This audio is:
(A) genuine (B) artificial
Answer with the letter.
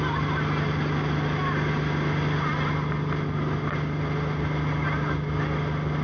A